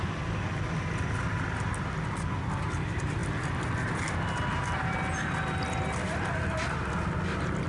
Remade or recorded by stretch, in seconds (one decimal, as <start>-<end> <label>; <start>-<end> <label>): 0.0-7.7 recorded